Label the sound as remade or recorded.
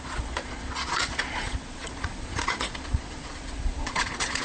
remade